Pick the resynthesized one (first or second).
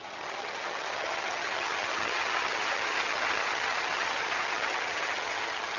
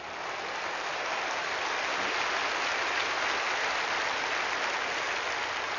first